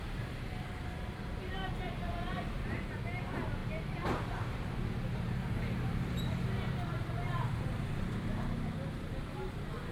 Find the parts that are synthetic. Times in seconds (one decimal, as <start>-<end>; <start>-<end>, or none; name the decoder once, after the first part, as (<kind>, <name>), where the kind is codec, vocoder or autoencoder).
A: 0.0-1.6 (vocoder, BigVGAN v2); 2.4-9.9